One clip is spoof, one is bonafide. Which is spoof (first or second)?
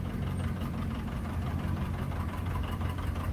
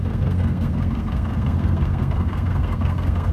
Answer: second